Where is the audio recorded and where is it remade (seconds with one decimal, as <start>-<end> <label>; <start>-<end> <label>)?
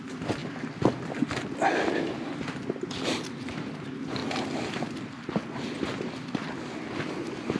0.0-7.6 recorded